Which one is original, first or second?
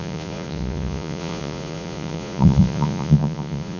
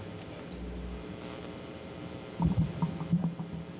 second